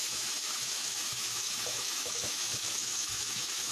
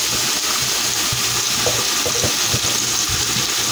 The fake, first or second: first